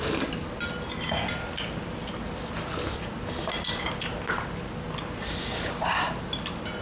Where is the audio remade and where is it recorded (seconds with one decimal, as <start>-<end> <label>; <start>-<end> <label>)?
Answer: 0.0-6.8 recorded